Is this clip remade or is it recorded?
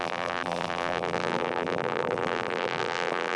remade